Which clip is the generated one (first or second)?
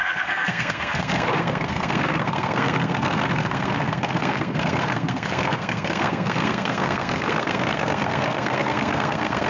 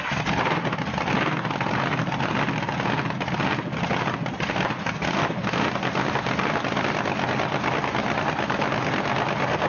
first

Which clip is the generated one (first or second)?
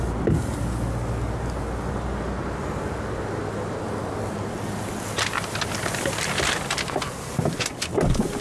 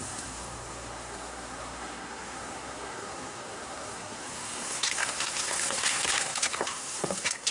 second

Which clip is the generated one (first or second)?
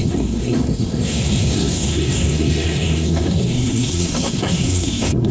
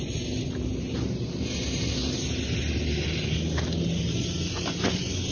first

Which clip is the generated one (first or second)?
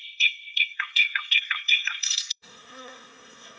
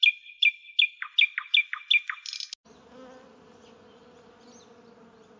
first